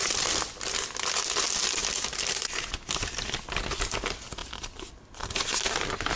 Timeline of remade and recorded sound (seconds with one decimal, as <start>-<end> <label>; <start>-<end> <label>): 0.0-6.2 recorded